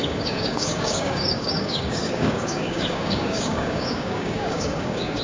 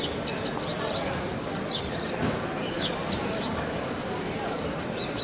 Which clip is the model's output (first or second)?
first